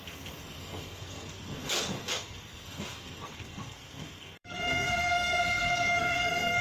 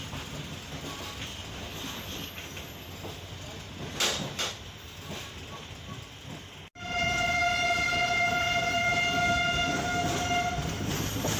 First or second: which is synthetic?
first